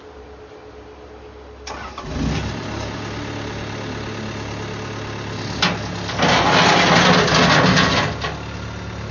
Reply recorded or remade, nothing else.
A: recorded